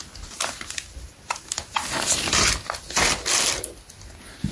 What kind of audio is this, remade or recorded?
recorded